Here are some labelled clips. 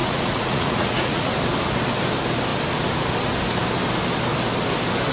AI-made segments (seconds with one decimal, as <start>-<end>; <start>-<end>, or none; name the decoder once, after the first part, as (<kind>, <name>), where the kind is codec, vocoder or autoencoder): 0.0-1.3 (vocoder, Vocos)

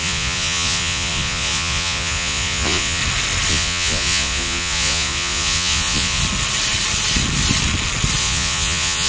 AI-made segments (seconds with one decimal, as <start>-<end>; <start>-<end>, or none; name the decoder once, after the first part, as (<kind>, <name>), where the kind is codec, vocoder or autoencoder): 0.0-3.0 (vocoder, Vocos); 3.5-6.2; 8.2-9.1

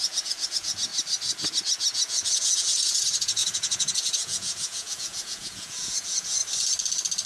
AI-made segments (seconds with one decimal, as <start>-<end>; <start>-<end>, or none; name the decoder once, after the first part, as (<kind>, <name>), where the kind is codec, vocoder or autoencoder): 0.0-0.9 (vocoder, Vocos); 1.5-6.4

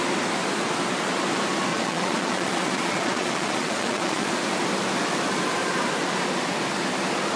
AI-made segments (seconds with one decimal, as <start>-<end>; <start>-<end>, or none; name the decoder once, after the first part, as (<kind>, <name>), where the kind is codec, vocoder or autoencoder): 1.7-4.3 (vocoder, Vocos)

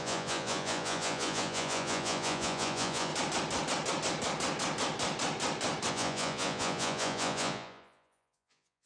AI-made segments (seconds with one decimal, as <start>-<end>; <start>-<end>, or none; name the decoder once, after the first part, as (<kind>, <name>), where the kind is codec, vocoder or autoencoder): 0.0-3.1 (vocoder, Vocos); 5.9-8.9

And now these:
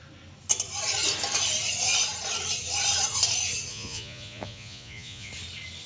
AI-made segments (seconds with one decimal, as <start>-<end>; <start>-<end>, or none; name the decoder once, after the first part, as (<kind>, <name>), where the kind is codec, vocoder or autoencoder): 3.7-5.3 (vocoder, Vocos)